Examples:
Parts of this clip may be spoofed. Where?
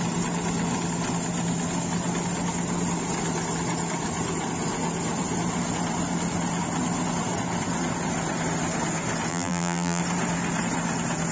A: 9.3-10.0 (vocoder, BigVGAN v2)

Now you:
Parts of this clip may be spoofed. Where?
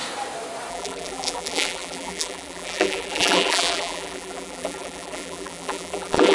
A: 0.7-6.3 (vocoder, BigVGAN v2)